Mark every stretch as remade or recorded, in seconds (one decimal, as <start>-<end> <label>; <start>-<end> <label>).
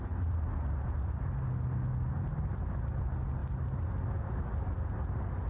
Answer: 0.0-5.5 recorded